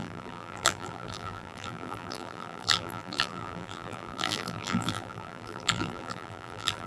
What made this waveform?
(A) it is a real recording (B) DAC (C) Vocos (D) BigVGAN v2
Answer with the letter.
D